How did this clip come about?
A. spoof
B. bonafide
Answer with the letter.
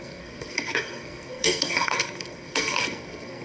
A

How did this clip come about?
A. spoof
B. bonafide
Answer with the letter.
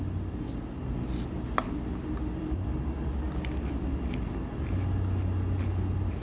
B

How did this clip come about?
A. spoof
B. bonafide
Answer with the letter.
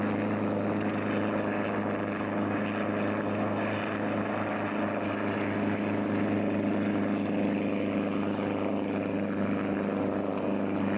B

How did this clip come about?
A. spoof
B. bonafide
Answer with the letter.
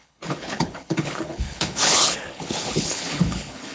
A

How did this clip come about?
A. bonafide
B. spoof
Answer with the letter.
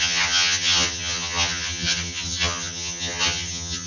B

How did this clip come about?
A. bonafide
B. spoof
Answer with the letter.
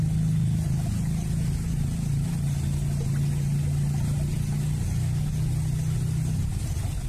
A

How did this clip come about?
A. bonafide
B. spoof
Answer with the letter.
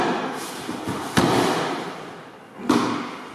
A